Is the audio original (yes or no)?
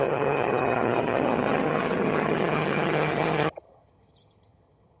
no